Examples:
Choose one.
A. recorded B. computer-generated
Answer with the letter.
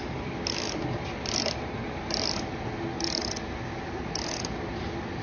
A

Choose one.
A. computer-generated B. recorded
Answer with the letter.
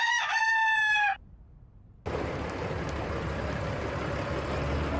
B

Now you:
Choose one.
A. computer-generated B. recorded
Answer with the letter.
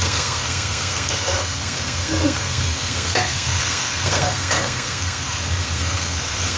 A